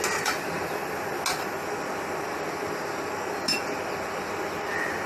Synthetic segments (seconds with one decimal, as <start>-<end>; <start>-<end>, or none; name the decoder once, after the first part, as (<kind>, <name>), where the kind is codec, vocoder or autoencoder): none